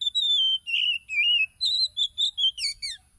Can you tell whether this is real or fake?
real